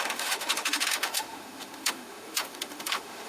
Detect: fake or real fake